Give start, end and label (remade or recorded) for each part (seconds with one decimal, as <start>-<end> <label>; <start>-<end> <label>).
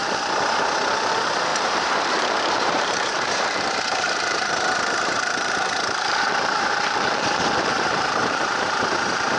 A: 0.0-1.1 recorded; 1.1-9.4 remade